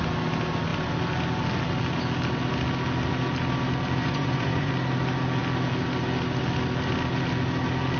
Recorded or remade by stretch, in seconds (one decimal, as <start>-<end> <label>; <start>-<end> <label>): 0.0-4.0 recorded; 4.0-4.7 remade; 4.7-8.0 recorded